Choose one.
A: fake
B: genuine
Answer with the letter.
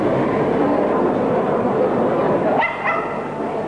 B